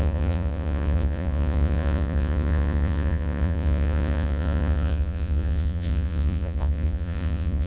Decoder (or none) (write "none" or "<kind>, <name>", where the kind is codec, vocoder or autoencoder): vocoder, Vocos